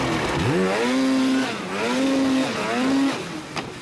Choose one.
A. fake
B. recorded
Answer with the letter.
B